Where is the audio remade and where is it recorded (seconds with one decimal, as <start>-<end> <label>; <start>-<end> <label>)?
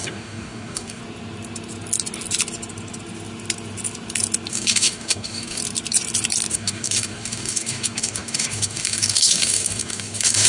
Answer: 0.0-1.0 remade; 1.0-4.5 recorded; 4.5-5.6 remade; 5.6-6.5 recorded; 6.5-10.5 remade